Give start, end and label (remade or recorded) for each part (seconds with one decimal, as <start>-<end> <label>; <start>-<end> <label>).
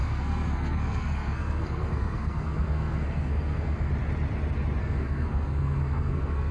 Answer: 0.0-3.9 remade; 3.9-4.8 recorded; 4.8-6.5 remade